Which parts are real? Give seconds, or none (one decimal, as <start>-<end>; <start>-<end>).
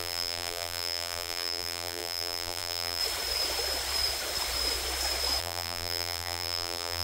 3.0-5.4